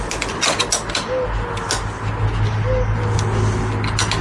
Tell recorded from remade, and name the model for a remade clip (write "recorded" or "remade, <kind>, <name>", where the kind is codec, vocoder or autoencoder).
recorded